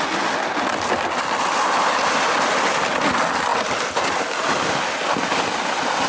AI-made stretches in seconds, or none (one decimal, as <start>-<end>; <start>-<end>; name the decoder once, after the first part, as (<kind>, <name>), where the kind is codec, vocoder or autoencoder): none